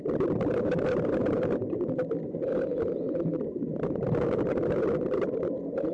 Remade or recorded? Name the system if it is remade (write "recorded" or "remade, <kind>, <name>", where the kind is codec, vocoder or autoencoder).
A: remade, vocoder, BigVGAN v2